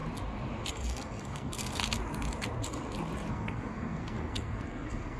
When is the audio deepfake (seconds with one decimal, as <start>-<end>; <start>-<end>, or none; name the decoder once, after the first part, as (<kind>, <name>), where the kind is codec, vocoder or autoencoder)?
0.7-1.8 (codec, SNAC); 3.3-5.2